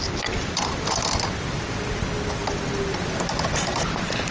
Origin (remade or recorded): recorded